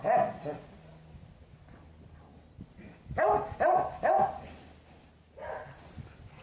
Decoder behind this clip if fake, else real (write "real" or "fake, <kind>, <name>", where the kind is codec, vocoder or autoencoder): real